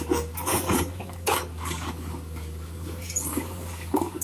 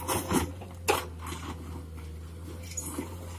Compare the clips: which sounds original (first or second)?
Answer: second